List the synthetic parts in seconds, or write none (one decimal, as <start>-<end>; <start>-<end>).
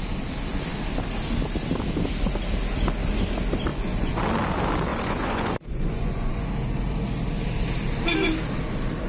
3.7-4.2; 4.9-6.5